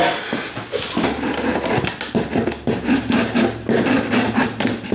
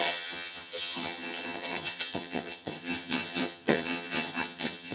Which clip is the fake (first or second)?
second